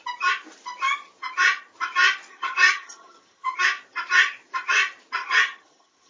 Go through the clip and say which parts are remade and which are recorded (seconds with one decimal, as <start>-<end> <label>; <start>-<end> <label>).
0.0-2.3 recorded; 2.3-3.6 remade; 3.6-5.2 recorded; 5.2-6.1 remade